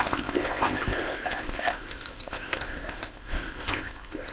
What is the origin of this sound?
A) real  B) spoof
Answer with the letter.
B